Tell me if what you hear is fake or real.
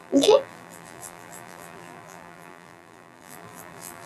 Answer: fake